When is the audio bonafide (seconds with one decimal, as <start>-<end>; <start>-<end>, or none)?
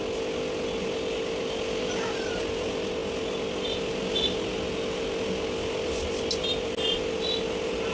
0.0-7.9